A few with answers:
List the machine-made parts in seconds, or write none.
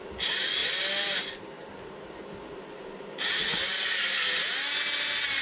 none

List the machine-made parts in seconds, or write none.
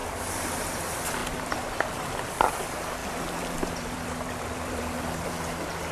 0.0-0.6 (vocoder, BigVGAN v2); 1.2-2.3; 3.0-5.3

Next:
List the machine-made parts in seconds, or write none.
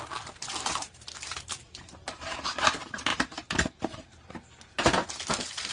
0.0-5.7 (vocoder, BigVGAN v2)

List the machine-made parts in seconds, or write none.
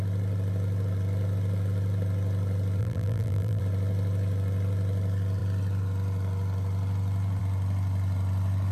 2.8-3.6 (vocoder, BigVGAN v2)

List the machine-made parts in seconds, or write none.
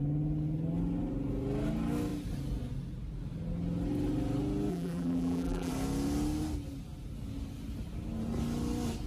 4.7-5.7 (vocoder, BigVGAN v2)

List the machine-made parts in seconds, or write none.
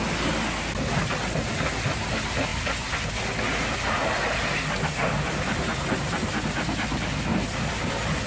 2.5-3.1 (vocoder, BigVGAN v2); 7.3-7.9